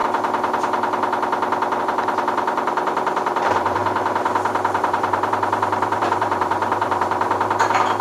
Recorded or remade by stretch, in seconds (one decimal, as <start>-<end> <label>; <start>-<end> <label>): 0.0-1.8 recorded; 1.8-3.8 remade; 3.8-4.8 recorded; 4.8-8.0 remade